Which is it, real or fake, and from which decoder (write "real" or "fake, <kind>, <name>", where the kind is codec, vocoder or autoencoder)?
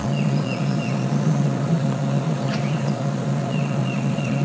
fake, vocoder, Vocos